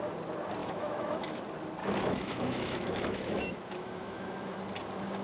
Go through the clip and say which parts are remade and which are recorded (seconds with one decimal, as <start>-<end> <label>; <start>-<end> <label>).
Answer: 0.0-0.6 recorded; 0.6-1.4 remade; 1.4-1.8 recorded; 1.8-4.6 remade; 4.6-5.2 recorded